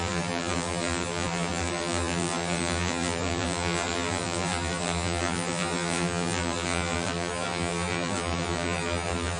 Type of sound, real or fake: fake